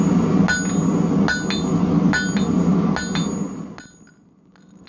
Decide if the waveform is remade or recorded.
recorded